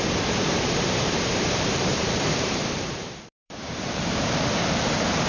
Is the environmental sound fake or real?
fake